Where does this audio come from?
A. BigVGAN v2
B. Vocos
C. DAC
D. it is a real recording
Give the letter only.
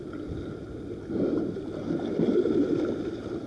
D